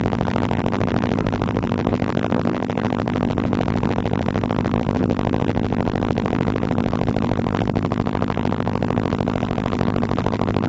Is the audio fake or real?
fake